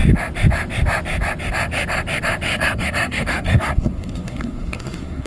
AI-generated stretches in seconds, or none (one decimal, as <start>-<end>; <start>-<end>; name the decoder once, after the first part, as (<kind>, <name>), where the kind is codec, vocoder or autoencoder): 2.5-5.3 (codec, SNAC)